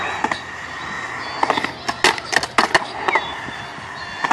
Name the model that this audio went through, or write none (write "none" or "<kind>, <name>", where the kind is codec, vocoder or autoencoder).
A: none